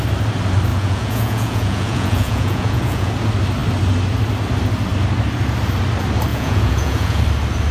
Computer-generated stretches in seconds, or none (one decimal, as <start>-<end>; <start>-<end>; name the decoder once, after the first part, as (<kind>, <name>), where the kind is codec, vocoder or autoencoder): 0.7-3.1 (vocoder, Vocos); 6.3-7.2